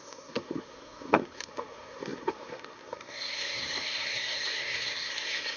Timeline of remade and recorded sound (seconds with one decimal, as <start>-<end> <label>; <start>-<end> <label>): 0.0-5.6 remade

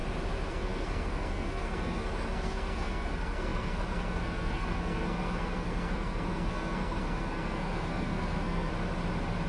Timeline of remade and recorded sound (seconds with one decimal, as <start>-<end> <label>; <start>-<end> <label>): 0.0-0.5 recorded; 0.5-8.7 remade; 8.7-9.5 recorded

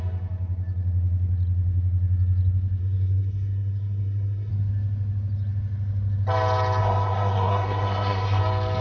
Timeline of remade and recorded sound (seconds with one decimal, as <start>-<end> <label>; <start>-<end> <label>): 0.0-2.8 recorded; 2.8-4.5 remade; 4.5-6.8 recorded; 6.8-8.4 remade; 8.4-8.8 recorded

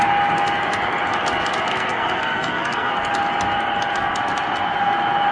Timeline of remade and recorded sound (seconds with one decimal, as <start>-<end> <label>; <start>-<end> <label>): 0.0-1.7 recorded; 1.7-2.9 remade; 2.9-5.3 recorded